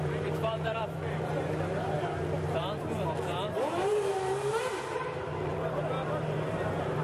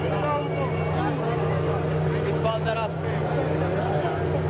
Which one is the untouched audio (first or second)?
second